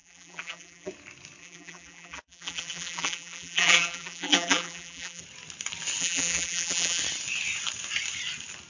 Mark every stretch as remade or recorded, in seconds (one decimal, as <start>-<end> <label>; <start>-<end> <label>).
0.0-0.9 remade; 0.9-1.4 recorded; 1.4-5.2 remade; 5.2-6.0 recorded; 6.0-7.0 remade; 7.0-8.7 recorded